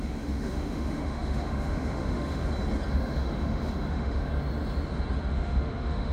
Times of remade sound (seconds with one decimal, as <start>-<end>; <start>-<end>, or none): 0.0-2.4; 2.9-4.3; 5.3-6.1